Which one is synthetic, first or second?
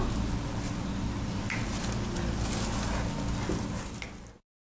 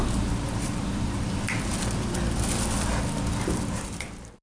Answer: second